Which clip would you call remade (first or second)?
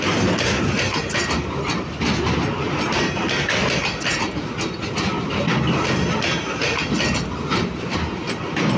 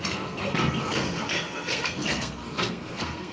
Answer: second